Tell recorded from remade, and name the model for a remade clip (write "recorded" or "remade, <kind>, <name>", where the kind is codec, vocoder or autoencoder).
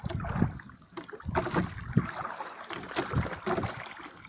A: recorded